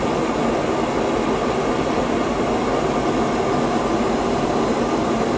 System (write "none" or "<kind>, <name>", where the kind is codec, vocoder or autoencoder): none